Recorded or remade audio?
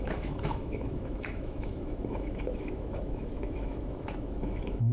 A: remade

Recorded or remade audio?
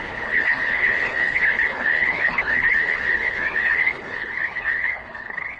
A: remade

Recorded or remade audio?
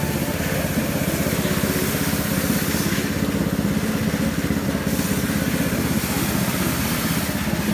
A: recorded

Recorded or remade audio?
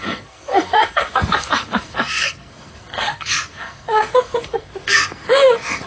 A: remade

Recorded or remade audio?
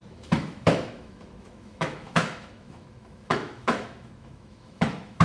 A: remade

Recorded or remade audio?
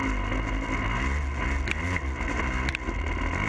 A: recorded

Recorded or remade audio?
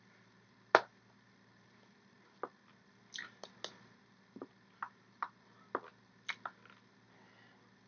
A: recorded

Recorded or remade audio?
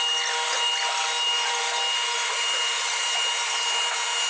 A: recorded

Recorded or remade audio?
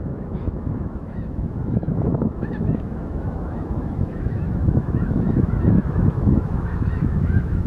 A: remade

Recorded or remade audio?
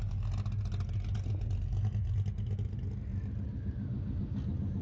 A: recorded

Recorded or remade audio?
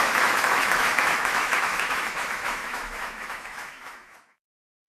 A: remade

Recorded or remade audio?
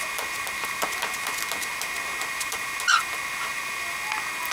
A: recorded